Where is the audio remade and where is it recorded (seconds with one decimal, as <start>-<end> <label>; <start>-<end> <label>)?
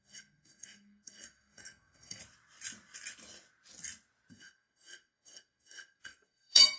0.0-2.2 remade; 2.2-4.3 recorded; 4.3-6.8 remade